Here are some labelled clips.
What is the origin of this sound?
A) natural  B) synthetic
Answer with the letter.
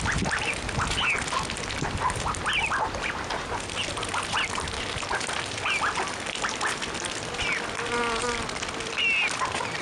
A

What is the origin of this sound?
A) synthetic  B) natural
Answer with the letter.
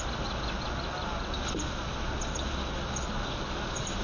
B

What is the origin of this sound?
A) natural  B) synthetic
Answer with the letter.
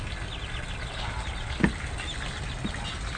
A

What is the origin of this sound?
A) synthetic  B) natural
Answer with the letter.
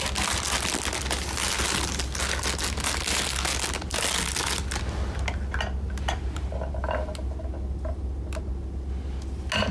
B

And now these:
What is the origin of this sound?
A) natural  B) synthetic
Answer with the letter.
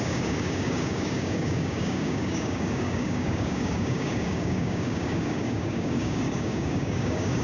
B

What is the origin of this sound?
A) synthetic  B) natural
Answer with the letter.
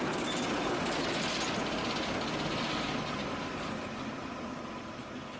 B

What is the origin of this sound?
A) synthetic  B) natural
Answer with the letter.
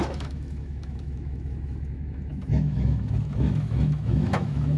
A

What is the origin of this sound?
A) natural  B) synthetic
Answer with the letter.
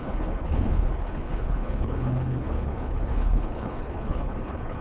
B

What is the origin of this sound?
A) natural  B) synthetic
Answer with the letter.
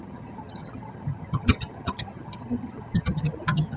B